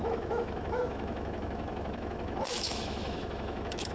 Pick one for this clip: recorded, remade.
remade